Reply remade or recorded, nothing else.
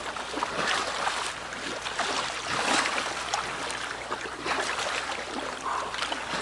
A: recorded